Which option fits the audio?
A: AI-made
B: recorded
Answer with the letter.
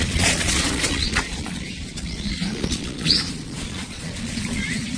A